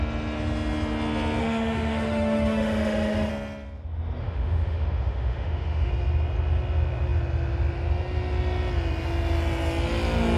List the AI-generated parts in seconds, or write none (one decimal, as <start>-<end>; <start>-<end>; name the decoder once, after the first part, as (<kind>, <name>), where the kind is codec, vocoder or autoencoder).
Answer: 1.4-3.3 (autoencoder, DAC-VAE); 4.2-5.9